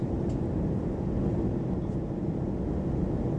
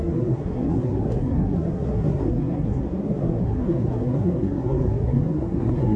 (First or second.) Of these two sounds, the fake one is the second